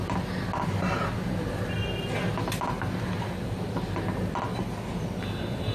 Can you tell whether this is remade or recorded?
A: recorded